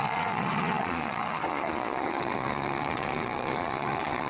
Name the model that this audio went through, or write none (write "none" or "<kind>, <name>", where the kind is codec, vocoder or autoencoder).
vocoder, Vocos